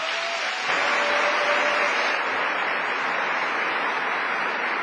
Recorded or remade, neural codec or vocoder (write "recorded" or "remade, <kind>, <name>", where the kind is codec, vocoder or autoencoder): recorded